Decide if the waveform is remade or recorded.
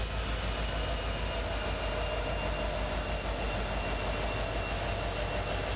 recorded